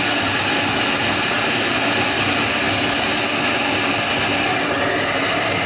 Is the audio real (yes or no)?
yes